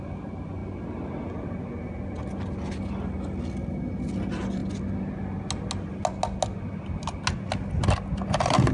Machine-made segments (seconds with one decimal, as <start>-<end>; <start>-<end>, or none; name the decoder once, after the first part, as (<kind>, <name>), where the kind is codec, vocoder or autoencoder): none